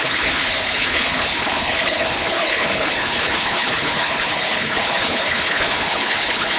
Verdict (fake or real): fake